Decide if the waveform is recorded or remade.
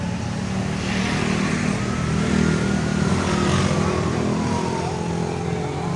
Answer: recorded